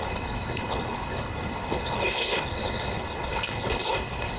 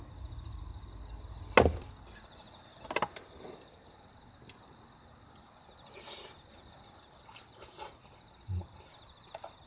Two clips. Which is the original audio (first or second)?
second